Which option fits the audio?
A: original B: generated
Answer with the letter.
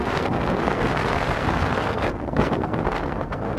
B